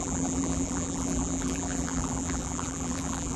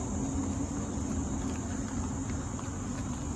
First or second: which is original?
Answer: second